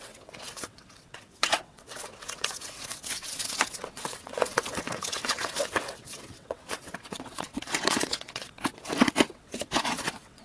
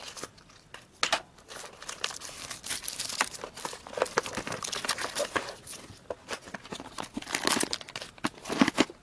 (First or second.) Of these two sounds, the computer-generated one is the first